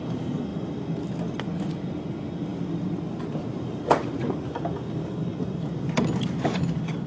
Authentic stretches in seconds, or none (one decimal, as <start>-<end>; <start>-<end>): 0.0-7.1